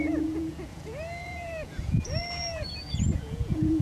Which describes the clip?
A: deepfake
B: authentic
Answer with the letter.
A